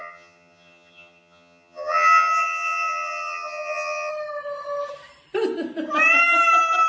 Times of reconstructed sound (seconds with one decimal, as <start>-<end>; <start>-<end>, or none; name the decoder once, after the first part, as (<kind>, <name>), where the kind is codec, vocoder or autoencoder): 0.0-4.1 (vocoder, HiFi-GAN)